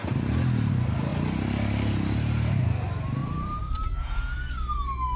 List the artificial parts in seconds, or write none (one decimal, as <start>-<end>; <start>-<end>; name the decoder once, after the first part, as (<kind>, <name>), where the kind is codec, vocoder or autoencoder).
3.2-3.7 (vocoder, BigVGAN v2)